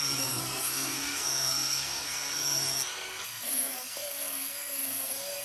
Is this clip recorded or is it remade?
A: remade